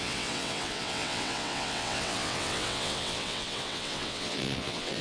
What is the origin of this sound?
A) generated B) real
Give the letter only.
A